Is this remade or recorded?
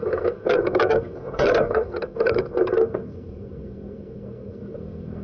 remade